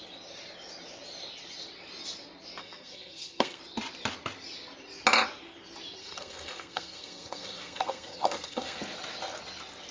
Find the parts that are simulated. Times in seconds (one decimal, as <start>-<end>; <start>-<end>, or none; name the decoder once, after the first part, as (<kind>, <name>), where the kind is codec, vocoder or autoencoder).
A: 2.6-3.6 (codec, SNAC); 6.0-8.8